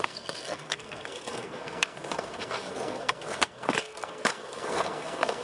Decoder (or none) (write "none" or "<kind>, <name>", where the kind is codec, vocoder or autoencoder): codec, SNAC